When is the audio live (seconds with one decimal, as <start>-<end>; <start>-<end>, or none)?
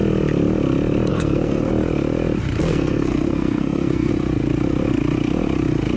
0.0-1.1; 1.7-2.6; 4.1-6.0